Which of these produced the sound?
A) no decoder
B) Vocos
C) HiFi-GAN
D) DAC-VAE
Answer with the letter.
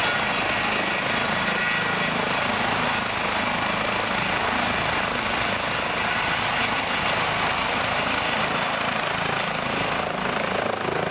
A